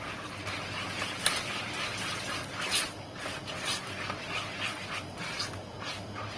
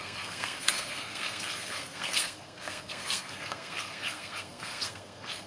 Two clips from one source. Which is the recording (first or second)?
first